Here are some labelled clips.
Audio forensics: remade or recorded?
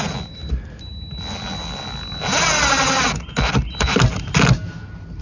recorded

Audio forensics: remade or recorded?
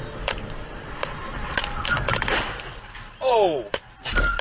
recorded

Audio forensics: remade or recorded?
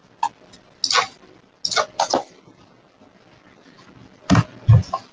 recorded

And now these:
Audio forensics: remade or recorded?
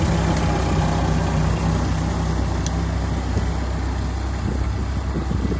recorded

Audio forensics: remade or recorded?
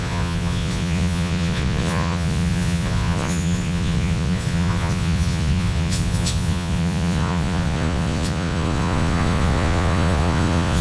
remade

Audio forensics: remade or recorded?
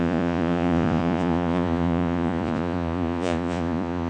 remade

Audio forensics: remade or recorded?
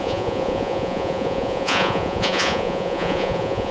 remade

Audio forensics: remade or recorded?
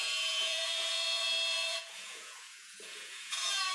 remade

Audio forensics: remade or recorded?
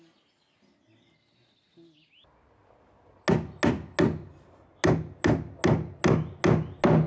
recorded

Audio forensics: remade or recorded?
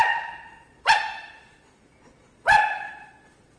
remade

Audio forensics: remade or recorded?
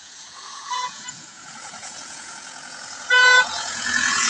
remade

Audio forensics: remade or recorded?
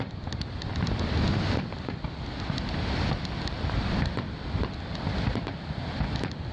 recorded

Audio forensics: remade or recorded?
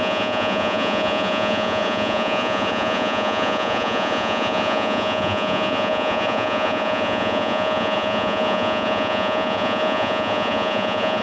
remade